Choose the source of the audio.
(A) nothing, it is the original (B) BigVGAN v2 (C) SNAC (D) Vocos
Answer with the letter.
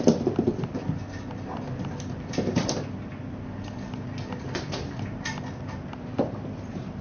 A